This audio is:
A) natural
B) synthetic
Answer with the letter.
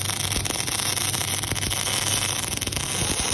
A